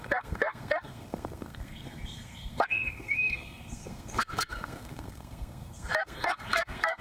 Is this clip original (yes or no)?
no